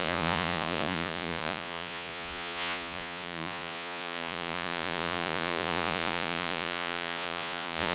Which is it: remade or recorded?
remade